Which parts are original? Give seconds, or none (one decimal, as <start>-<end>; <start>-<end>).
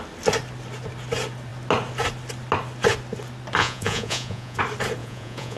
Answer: 0.0-3.6; 4.6-5.0